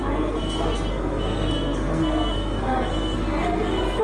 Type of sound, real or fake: fake